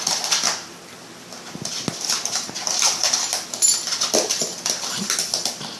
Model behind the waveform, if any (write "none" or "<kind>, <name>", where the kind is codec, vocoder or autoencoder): none